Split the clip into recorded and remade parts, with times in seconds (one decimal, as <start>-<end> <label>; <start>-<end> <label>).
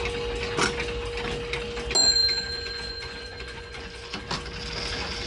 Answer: 0.0-2.0 recorded; 2.0-4.2 remade; 4.2-5.3 recorded